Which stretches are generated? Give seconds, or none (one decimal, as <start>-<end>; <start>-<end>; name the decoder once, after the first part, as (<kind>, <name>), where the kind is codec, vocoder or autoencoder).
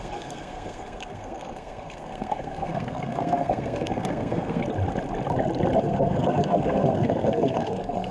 0.0-4.6 (codec, SNAC); 5.8-8.1